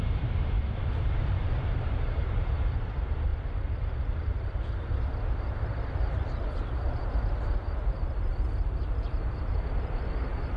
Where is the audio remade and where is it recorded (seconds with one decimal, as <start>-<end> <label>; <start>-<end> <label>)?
0.0-3.3 remade; 3.3-3.8 recorded; 3.8-10.6 remade